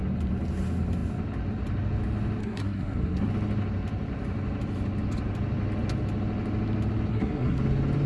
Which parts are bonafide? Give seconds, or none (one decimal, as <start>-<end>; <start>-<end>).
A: 0.0-2.4; 3.3-7.1; 7.6-8.1